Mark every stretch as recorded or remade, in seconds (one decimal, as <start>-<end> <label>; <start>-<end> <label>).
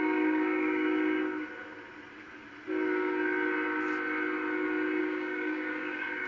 0.0-1.2 remade; 1.2-5.0 recorded; 5.0-6.3 remade